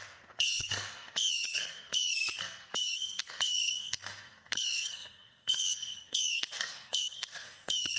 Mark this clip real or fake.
fake